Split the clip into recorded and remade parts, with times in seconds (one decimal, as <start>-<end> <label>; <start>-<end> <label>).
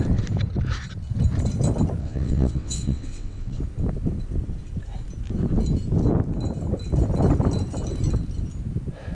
0.0-2.0 recorded; 2.0-3.6 remade; 3.6-9.1 recorded